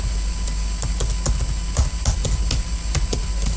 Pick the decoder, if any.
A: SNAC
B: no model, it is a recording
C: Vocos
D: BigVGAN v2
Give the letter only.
B